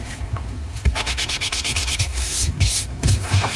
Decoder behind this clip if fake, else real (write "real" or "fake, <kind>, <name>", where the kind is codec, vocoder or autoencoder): fake, codec, SNAC